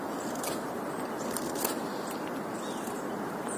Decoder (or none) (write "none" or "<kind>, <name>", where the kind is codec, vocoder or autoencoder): none